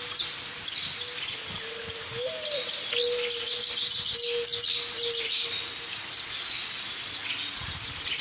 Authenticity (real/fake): real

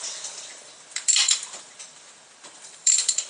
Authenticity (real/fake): fake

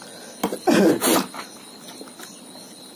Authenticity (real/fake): real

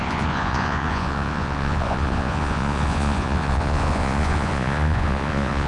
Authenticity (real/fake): fake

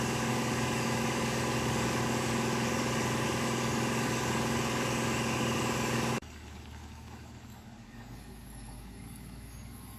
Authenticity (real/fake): fake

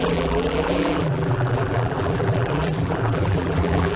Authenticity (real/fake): fake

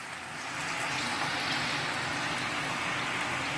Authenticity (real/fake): real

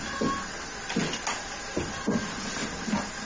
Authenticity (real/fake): real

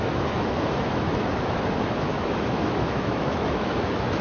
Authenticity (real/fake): fake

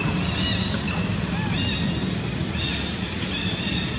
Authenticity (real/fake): real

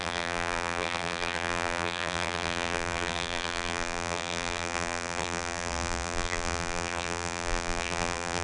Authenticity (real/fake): fake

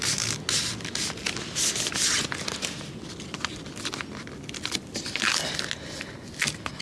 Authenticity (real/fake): real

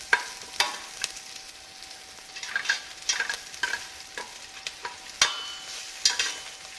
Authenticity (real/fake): real